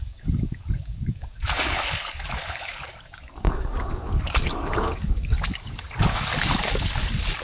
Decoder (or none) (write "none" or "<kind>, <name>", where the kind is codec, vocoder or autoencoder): codec, DAC